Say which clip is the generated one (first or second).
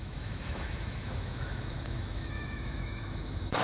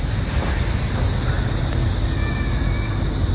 first